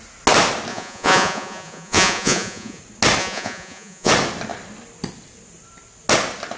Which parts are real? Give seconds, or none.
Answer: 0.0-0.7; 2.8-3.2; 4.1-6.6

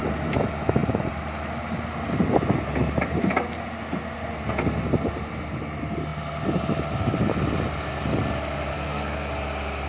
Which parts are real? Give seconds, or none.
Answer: 0.0-8.7; 9.3-9.9